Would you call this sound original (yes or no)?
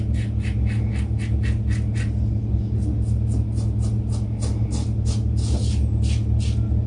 yes